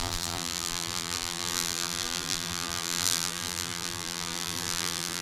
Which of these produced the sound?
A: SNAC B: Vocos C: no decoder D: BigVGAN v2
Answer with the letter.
D